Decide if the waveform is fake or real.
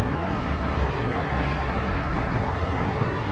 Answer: fake